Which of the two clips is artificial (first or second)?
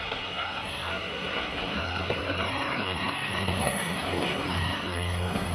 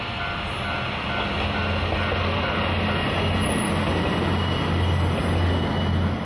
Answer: first